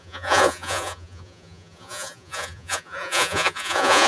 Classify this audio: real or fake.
fake